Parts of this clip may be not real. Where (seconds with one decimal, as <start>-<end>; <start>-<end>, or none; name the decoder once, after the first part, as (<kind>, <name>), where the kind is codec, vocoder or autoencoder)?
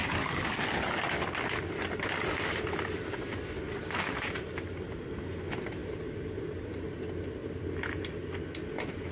0.0-1.0 (codec, DAC)